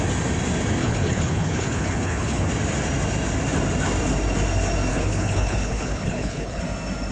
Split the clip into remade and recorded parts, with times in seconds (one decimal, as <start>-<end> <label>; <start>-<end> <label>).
0.0-0.8 recorded; 0.8-2.5 remade; 2.5-4.9 recorded; 4.9-6.6 remade; 6.6-7.1 recorded